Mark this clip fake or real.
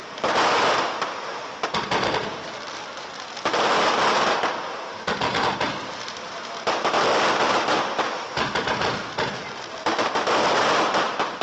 real